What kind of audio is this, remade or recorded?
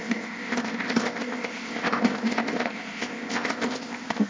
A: remade